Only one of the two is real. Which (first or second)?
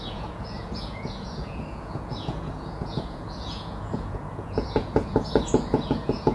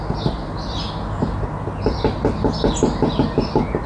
second